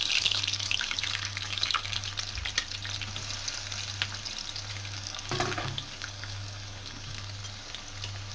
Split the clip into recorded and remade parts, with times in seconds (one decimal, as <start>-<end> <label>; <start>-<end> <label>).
0.0-2.1 remade; 2.1-4.7 recorded; 4.7-7.4 remade; 7.4-8.3 recorded

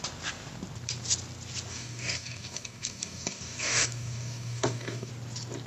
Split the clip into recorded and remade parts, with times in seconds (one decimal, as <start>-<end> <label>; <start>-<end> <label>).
0.0-1.7 recorded; 1.7-5.1 remade; 5.1-5.7 recorded

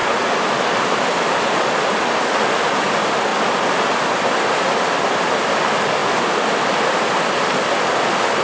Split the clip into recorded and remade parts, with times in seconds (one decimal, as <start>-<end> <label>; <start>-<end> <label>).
0.0-8.4 recorded

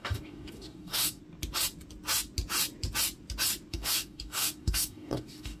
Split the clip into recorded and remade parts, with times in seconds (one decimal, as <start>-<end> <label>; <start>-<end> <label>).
0.0-1.2 remade; 1.2-3.7 recorded; 3.7-5.6 remade